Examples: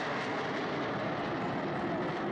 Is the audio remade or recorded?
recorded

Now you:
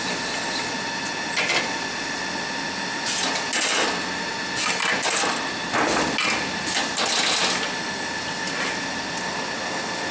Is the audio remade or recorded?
recorded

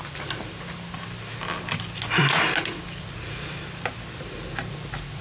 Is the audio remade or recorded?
recorded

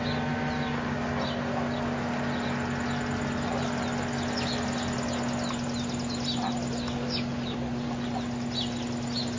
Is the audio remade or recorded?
recorded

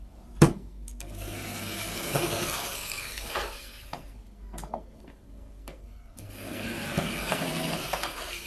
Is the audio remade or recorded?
remade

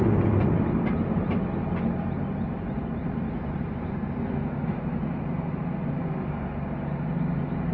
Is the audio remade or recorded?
recorded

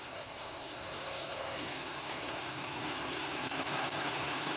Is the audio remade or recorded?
remade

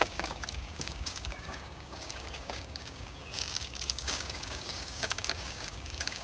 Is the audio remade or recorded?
remade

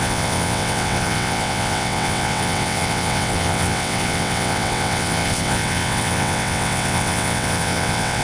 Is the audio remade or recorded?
remade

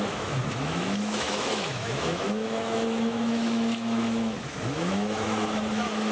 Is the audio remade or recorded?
remade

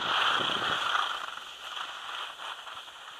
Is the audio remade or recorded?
remade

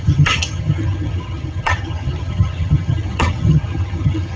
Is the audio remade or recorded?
remade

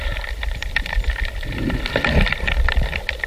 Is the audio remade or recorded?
recorded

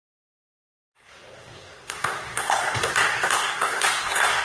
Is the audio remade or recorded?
remade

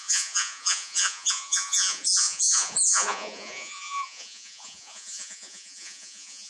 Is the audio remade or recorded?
remade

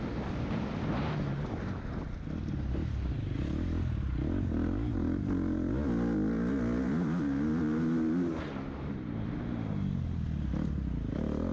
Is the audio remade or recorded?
recorded